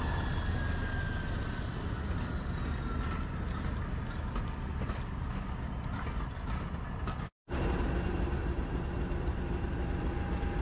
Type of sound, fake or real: real